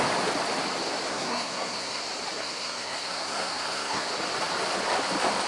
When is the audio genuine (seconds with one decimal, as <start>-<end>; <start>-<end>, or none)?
0.0-1.1; 2.0-2.4; 4.1-5.5